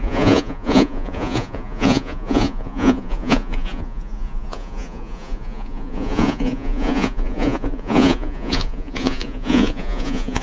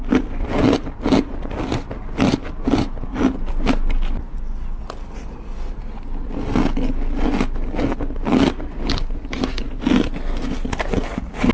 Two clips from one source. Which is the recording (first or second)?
second